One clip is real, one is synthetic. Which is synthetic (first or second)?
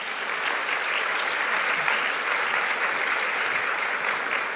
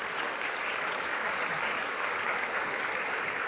second